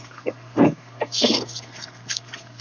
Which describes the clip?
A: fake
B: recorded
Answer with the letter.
A